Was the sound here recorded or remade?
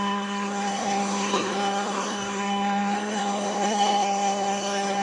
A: remade